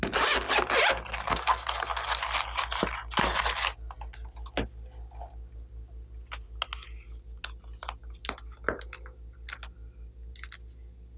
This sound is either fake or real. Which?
real